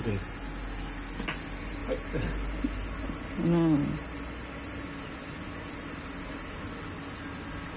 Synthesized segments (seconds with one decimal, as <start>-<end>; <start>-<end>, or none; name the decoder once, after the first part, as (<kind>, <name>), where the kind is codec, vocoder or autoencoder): none